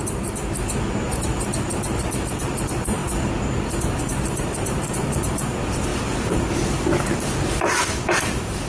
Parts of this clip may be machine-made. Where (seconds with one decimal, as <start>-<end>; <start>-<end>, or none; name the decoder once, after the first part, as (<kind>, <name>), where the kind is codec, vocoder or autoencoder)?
0.0-0.4 (vocoder, BigVGAN v2); 2.6-3.0; 4.0-8.7